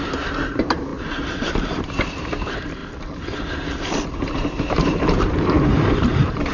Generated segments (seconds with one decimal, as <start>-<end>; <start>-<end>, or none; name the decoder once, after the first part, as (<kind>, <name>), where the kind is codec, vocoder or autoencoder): 0.0-2.8 (vocoder, BigVGAN v2); 4.1-6.5